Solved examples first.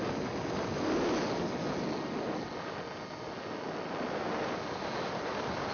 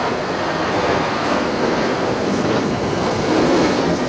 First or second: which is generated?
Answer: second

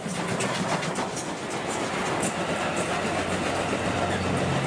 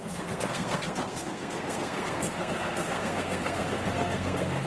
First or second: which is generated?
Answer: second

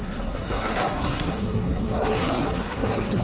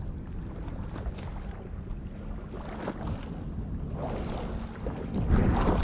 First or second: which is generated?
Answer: first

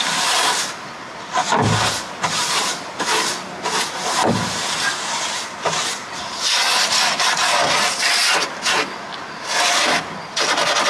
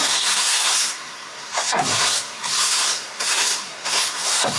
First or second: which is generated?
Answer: second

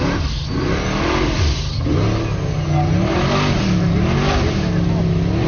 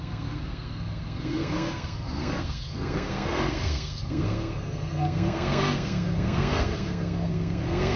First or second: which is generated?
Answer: second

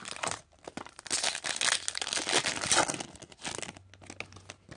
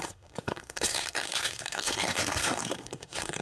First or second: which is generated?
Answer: second